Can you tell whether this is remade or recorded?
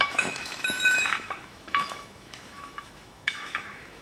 remade